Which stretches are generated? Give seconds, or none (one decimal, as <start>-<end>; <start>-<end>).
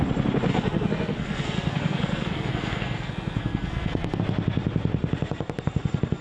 0.5-4.2